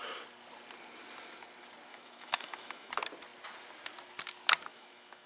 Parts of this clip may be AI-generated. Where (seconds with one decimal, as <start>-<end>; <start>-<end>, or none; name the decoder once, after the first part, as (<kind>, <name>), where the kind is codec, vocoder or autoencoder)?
1.9-2.9 (autoencoder, DAC-VAE); 4.7-5.3